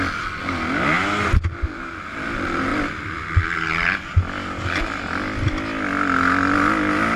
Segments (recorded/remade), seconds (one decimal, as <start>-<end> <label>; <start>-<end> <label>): 0.0-7.2 recorded